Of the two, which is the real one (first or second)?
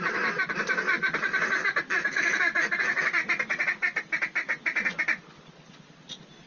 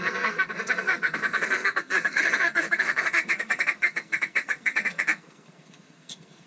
first